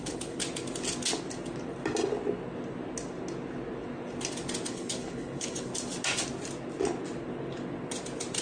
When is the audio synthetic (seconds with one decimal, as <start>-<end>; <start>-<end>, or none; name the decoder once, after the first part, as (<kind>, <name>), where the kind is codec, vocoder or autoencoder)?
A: 0.0-0.4 (codec, HILCodec); 4.7-5.7